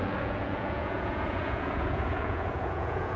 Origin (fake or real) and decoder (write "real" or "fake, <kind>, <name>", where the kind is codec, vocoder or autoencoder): fake, vocoder, Vocos